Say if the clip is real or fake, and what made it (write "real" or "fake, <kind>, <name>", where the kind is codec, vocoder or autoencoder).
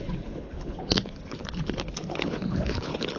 fake, codec, HILCodec